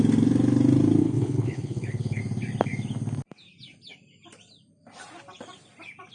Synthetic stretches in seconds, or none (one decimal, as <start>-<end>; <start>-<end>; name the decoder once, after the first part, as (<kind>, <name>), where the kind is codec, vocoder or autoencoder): 1.0-2.2 (codec, HILCodec)